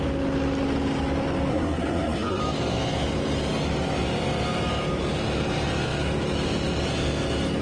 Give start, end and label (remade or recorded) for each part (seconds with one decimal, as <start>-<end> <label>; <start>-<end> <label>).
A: 0.0-1.5 recorded; 1.5-2.4 remade; 2.4-7.6 recorded